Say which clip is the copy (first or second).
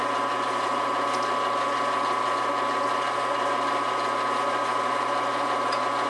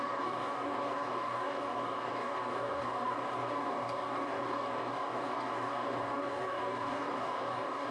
second